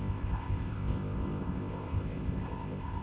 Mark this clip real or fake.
fake